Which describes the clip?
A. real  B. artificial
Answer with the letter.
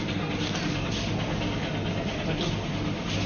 A